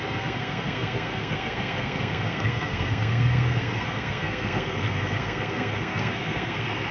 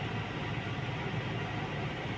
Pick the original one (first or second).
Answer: second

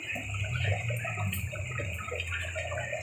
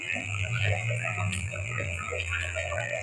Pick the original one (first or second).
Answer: first